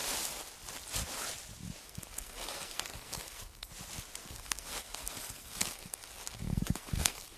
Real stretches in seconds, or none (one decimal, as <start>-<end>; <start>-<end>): 0.0-1.8; 3.7-4.2

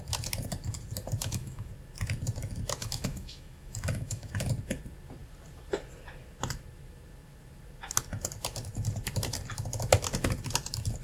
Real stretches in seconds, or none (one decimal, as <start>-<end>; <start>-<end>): 0.0-1.2; 1.7-2.8; 4.3-11.0

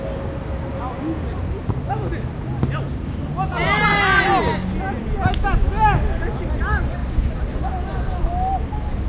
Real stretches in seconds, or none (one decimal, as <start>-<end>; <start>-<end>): 0.0-9.1

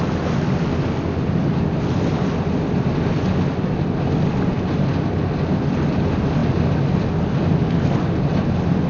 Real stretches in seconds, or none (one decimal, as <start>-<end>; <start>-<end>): 0.0-8.9

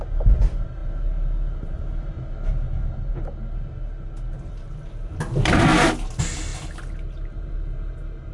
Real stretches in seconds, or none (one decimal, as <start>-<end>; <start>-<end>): 0.0-8.3

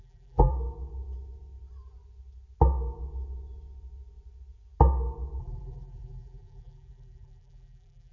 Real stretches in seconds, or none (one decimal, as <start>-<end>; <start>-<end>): 0.5-5.4